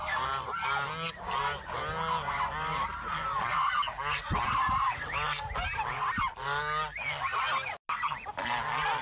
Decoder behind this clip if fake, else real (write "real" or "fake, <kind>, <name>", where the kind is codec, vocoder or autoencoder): real